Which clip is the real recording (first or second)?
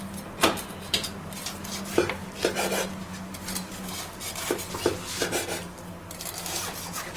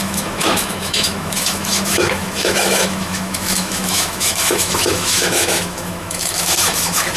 first